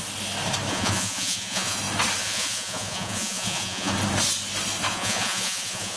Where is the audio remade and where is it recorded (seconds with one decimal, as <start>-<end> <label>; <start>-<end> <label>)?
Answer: 0.0-0.7 recorded; 0.7-1.8 remade; 1.8-2.2 recorded; 2.2-3.9 remade; 3.9-4.9 recorded; 4.9-6.0 remade